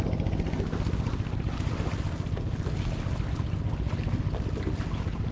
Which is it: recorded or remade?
recorded